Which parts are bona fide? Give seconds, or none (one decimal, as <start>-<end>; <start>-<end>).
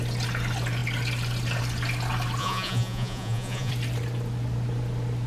0.0-2.4; 3.7-5.3